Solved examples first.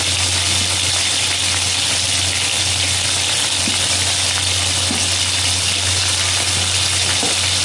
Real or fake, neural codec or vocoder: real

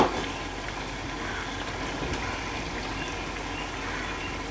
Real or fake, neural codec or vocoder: real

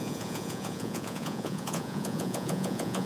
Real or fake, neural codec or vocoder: fake, vocoder, Vocos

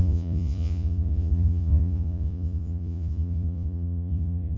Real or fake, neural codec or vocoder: fake, vocoder, Vocos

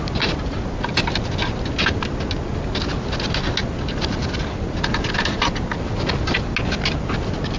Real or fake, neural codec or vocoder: real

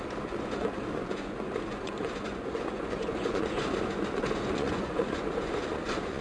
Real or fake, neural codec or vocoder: fake, vocoder, Vocos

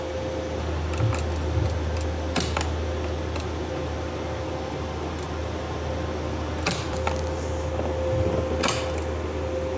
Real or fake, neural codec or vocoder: real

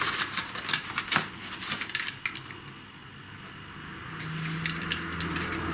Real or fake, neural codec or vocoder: real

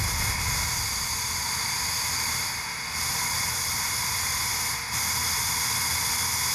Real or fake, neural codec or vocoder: real